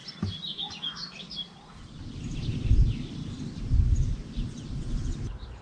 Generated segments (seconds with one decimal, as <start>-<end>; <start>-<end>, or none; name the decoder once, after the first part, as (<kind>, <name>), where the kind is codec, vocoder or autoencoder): none